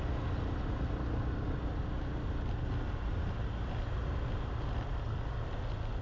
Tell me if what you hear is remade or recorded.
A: recorded